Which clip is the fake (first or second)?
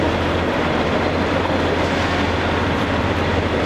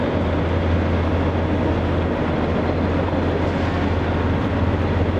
first